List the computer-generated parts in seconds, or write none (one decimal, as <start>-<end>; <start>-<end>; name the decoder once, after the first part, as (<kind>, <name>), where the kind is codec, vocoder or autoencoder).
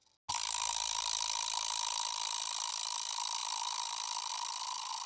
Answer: none